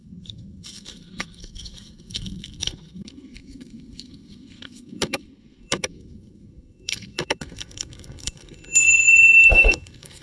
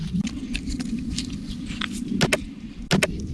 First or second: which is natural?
second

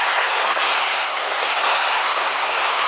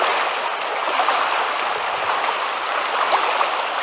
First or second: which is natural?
second